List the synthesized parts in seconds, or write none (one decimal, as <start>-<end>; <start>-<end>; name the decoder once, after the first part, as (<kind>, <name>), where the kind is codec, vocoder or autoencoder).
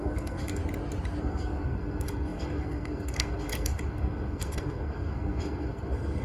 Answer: 0.0-0.6 (codec, SNAC); 1.2-6.2